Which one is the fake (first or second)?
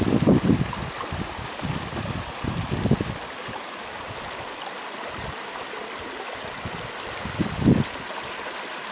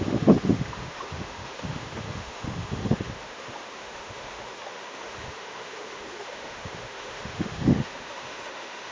second